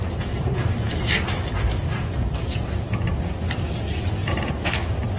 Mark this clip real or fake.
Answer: real